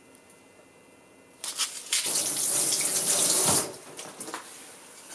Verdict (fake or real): real